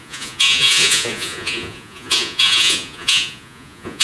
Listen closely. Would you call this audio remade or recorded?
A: remade